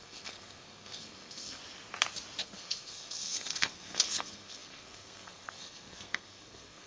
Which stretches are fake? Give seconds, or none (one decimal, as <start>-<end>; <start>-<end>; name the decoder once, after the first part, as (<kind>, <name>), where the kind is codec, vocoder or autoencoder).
0.0-1.6 (codec, SNAC); 2.4-6.9